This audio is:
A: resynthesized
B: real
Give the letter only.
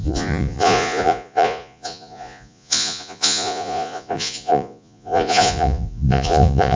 A